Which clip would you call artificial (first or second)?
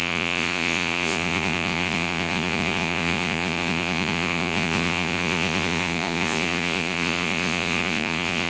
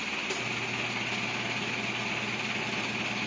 first